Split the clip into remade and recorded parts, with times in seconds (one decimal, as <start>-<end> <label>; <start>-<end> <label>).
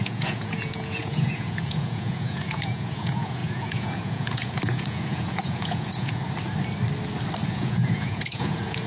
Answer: 0.0-6.2 remade; 6.2-7.5 recorded; 7.5-8.9 remade